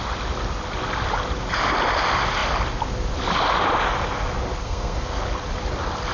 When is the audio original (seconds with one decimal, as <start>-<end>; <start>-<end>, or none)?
0.0-4.6; 5.2-6.1